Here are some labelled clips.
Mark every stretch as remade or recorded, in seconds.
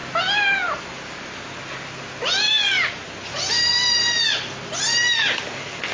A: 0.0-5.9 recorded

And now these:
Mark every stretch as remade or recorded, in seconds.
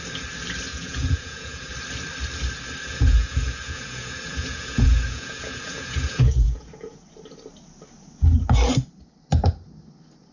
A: 0.0-0.7 recorded; 0.7-1.7 remade; 1.7-2.9 recorded; 2.9-7.0 remade; 7.0-10.3 recorded